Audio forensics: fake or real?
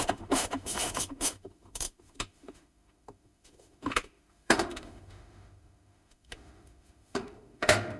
fake